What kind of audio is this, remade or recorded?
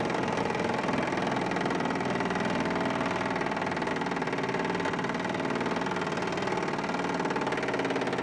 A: recorded